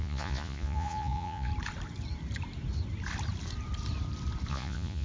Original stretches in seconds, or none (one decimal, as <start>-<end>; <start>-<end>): 1.5-4.5